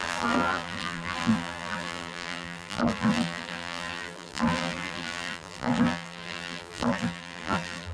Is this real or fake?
fake